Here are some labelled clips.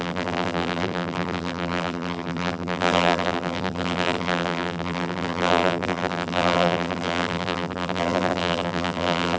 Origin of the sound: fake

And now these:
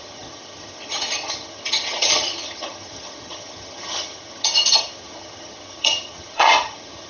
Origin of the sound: fake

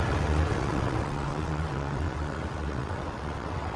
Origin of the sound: fake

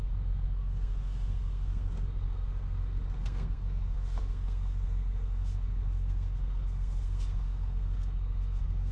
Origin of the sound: fake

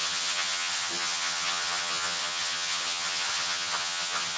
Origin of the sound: fake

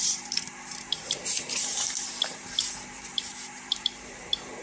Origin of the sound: fake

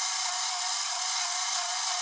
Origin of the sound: real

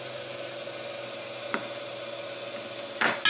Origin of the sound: real